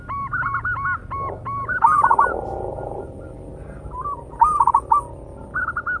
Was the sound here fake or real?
real